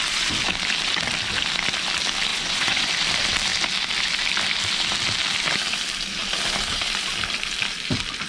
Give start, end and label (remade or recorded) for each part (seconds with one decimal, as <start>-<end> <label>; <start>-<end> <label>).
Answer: 0.0-2.3 recorded; 2.3-2.9 remade; 2.9-8.3 recorded